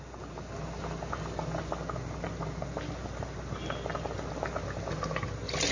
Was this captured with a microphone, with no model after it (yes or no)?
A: yes